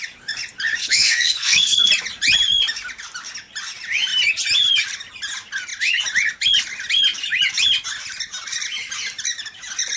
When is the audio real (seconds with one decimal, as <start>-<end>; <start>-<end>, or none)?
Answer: 0.0-0.8; 1.9-10.0